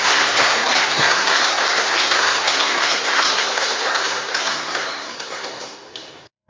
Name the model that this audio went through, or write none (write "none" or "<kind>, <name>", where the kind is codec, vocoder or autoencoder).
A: codec, SNAC